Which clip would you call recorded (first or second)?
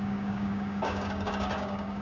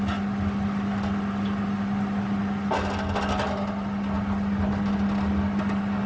second